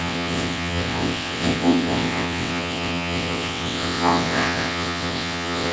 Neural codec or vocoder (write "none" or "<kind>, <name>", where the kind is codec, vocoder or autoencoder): vocoder, WaveNeXt